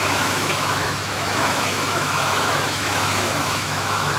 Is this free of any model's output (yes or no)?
no